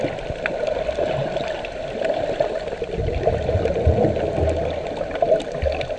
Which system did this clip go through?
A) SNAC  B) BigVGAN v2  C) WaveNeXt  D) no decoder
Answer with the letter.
D